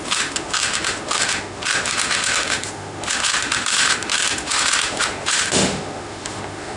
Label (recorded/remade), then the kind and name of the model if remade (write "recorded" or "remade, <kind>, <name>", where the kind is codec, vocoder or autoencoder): remade, autoencoder, DAC-VAE